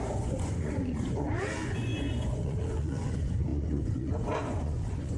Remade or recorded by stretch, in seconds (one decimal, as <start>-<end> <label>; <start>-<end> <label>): 0.0-5.2 remade